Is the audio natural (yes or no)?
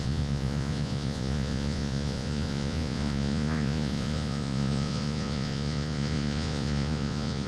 no